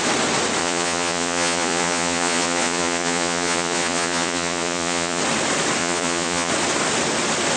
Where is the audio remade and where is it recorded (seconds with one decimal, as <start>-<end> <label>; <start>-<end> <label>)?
0.0-0.6 recorded; 0.6-5.2 remade; 5.2-5.8 recorded; 5.8-6.5 remade; 6.5-7.6 recorded